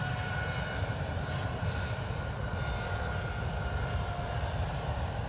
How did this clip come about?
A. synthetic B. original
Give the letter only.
B